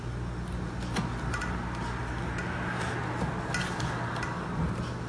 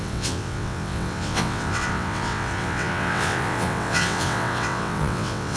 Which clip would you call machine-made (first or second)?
second